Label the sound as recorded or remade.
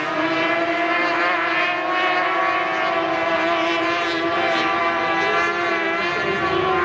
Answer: recorded